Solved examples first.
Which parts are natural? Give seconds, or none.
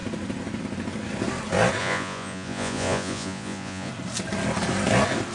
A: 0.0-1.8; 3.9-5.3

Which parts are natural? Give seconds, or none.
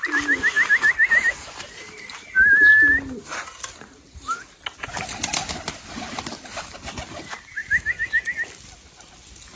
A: 0.0-9.6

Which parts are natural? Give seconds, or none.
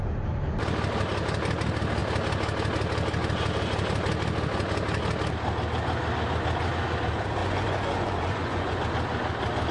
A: 0.0-7.4; 8.8-9.7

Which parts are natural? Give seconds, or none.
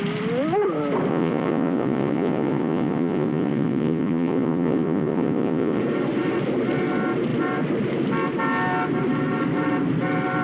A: 0.0-1.1; 5.8-10.4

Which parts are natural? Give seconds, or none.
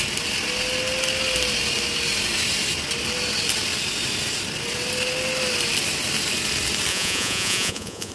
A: 0.0-6.9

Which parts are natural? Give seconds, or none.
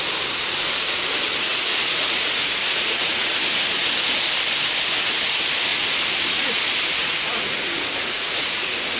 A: 0.0-1.5; 3.9-5.7; 6.5-7.0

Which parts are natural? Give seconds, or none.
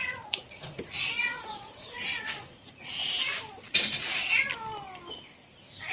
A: 3.0-5.9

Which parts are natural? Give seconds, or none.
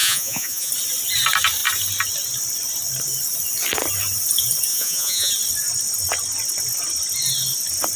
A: 0.7-4.7; 5.3-8.0